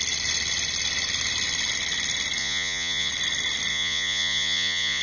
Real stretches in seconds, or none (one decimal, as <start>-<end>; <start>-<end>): 0.0-2.4; 3.1-3.7